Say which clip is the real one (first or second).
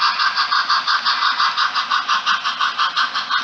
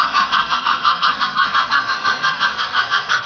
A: first